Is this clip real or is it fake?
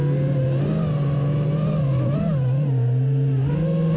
real